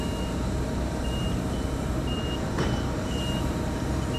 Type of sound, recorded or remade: remade